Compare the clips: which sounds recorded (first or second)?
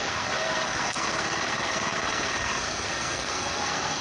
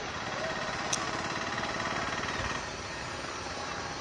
second